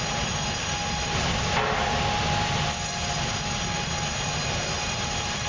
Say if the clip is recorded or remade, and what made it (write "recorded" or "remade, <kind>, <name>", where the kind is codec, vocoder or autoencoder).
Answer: recorded